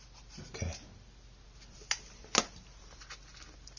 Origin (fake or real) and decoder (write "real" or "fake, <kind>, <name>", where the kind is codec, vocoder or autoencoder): real